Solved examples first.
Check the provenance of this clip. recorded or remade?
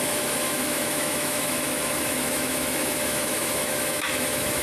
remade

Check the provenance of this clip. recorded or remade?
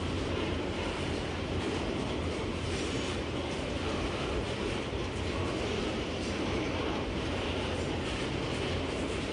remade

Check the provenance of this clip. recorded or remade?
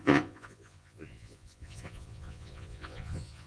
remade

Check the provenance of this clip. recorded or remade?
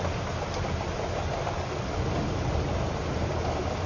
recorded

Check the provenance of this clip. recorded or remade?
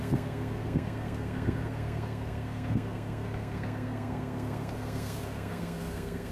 remade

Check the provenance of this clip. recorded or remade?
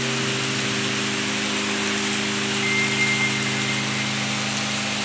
recorded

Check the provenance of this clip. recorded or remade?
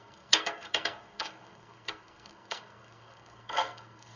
remade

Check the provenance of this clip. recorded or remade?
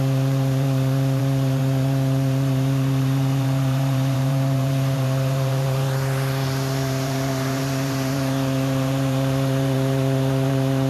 remade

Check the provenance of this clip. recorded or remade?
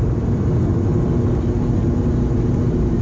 recorded